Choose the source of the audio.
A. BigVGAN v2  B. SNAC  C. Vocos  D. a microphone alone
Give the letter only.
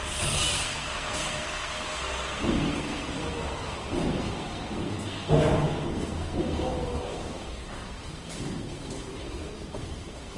B